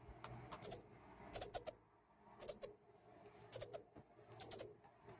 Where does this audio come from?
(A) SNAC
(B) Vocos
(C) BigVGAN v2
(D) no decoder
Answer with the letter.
D